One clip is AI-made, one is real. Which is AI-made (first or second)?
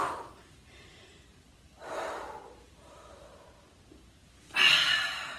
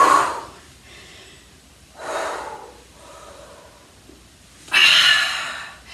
first